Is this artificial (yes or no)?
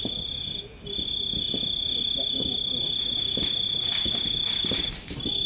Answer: no